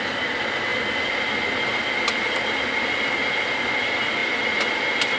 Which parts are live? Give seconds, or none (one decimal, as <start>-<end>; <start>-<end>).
0.0-5.2